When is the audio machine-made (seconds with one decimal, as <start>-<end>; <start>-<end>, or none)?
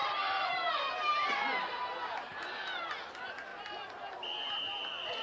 0.0-0.7; 2.3-2.9; 3.5-4.2